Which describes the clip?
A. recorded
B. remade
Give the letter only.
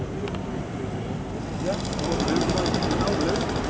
A